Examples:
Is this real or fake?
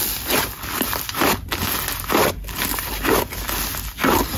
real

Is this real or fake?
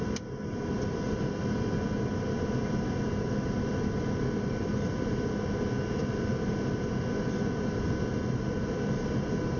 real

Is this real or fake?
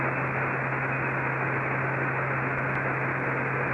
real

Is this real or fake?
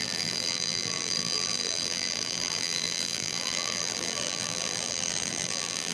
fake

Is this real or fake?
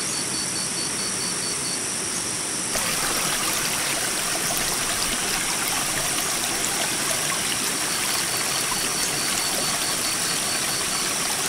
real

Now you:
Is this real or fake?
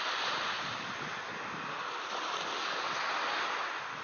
real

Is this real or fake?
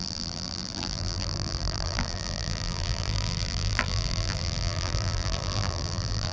fake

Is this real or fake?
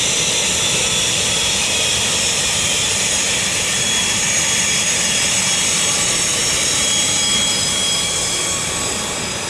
fake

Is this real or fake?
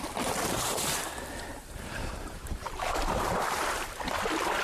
fake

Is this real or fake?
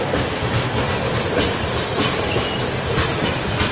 fake